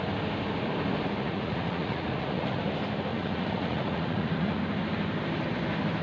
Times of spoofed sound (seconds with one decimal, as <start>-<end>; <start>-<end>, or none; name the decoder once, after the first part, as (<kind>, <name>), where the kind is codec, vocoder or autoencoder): 1.2-2.6 (vocoder, Vocos); 3.1-4.6